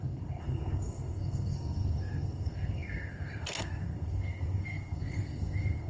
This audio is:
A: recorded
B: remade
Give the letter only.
B